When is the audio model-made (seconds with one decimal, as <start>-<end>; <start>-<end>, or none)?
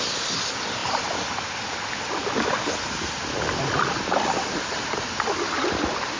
none